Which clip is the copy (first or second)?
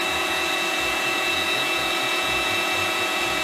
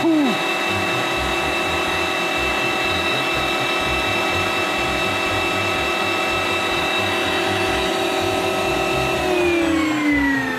first